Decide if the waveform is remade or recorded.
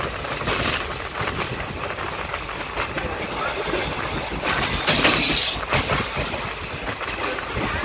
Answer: recorded